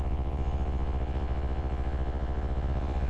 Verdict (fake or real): fake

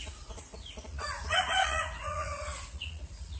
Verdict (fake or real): fake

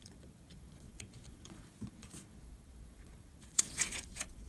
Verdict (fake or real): fake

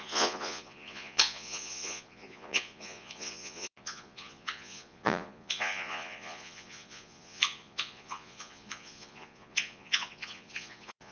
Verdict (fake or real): fake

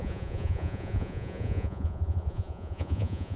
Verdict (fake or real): fake